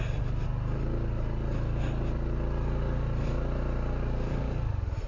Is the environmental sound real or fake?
real